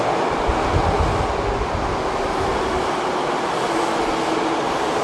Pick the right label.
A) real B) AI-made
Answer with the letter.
A